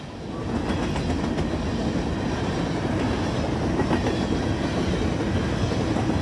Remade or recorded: recorded